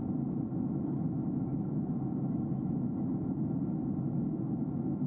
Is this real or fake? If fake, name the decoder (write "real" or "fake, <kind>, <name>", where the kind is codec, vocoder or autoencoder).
real